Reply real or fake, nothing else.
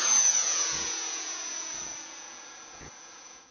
fake